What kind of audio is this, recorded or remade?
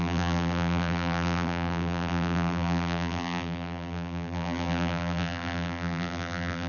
remade